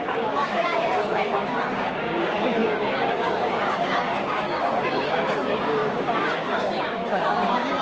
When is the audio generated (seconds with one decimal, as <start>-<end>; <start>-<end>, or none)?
0.0-7.8